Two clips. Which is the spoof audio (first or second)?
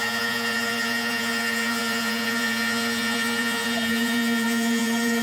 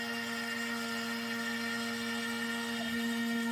first